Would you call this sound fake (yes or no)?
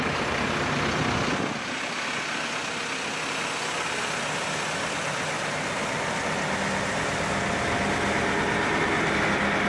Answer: no